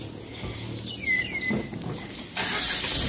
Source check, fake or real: real